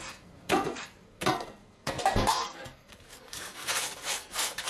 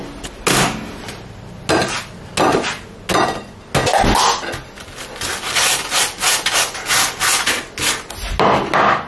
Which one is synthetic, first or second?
first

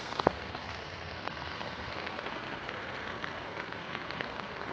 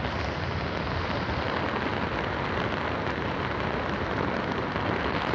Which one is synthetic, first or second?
first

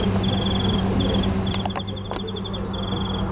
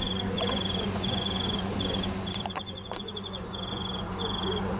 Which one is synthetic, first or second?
second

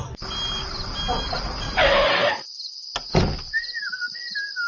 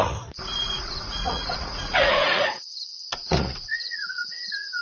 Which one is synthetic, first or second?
second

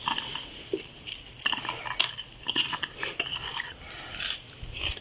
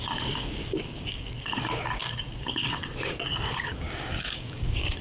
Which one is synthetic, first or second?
second